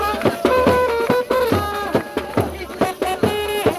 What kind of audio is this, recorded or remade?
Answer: remade